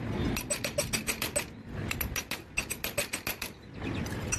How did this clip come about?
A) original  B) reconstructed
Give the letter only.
A